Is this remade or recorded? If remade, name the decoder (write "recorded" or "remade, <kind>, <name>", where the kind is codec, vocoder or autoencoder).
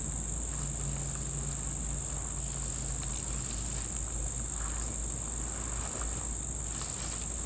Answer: recorded